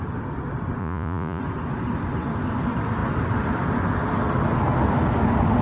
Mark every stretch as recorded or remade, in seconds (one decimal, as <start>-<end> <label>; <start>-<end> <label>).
0.0-0.8 recorded; 0.8-1.4 remade; 1.4-5.6 recorded